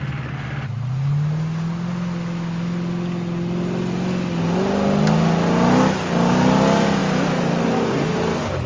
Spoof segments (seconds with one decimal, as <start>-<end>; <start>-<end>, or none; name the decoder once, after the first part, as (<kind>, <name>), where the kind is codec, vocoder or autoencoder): none